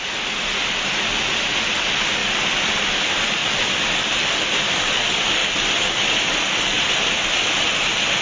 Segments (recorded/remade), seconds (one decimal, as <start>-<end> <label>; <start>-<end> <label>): 0.0-8.2 recorded